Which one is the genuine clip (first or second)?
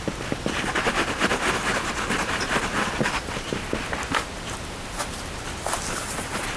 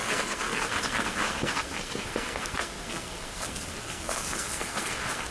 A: first